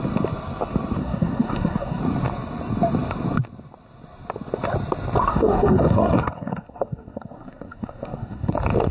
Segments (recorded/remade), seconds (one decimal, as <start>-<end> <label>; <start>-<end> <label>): 0.0-1.0 recorded; 1.0-2.0 remade; 2.0-5.3 recorded; 5.3-8.5 remade; 8.5-8.9 recorded